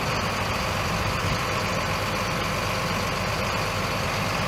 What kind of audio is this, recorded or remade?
recorded